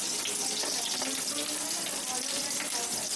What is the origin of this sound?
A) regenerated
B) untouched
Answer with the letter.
B